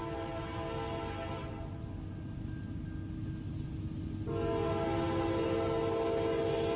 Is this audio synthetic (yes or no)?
no